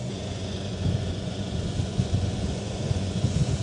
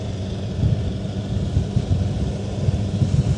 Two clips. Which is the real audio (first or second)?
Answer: second